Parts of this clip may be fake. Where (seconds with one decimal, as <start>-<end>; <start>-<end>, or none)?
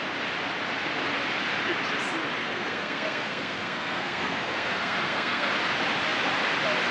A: 2.4-5.5